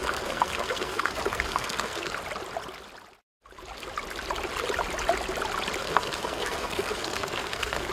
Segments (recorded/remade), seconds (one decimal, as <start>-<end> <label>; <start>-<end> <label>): 0.0-2.1 remade; 2.1-5.8 recorded; 5.8-7.9 remade